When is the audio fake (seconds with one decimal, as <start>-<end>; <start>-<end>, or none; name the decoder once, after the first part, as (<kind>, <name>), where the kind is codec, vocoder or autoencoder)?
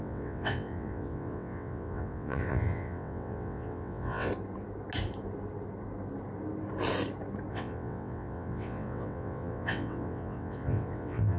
0.0-4.3 (vocoder, WaveNeXt); 7.5-11.4